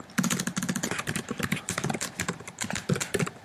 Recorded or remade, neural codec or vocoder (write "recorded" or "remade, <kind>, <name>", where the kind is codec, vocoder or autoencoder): recorded